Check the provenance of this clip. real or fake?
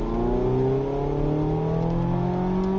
real